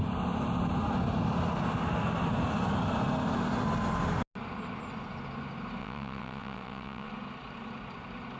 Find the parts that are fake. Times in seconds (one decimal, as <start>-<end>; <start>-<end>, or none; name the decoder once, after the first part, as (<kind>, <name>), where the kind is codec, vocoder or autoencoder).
5.8-7.1 (vocoder, WaveNeXt)